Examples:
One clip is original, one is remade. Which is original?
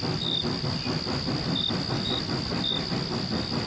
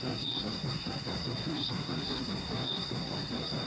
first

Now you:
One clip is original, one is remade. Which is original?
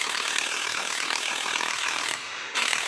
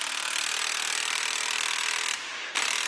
second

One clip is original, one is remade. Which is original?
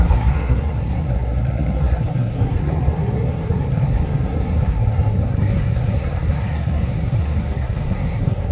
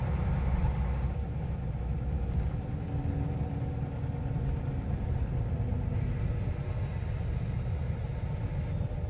second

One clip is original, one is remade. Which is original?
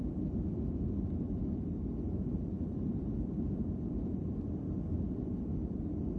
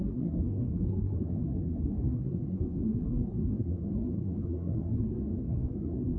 first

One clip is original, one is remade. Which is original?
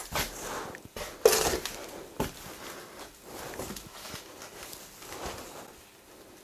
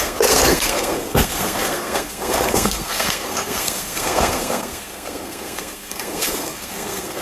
first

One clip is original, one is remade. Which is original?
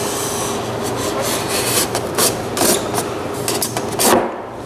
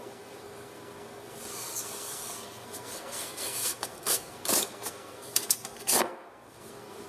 first